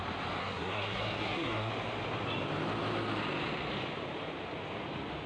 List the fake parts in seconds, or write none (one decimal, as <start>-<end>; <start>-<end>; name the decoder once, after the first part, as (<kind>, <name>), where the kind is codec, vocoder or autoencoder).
0.4-1.7 (codec, SNAC)

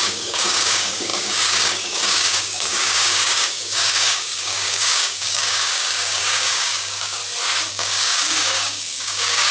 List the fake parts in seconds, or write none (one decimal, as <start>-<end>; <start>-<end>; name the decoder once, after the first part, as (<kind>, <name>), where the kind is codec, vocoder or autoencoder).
0.0-7.2 (codec, DAC); 7.7-9.5